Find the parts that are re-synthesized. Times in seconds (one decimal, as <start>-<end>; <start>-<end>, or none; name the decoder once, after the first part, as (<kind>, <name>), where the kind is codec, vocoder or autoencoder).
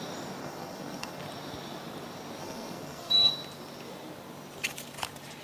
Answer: 0.4-1.2 (codec, SNAC); 2.4-3.3